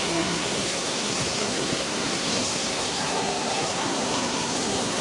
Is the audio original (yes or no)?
no